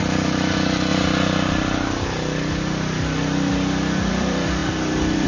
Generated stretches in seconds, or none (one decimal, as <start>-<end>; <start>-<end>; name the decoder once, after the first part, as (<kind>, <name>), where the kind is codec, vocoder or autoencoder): 0.0-0.9 (vocoder, BigVGAN v2); 4.1-5.3